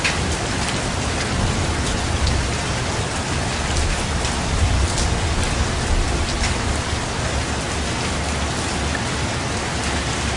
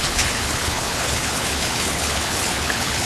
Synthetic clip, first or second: second